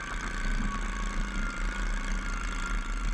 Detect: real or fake real